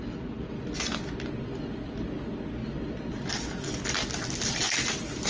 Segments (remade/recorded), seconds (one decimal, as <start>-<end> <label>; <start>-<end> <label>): 0.0-5.3 recorded